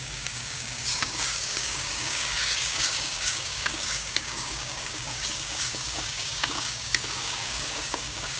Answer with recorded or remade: remade